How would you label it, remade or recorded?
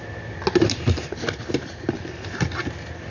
recorded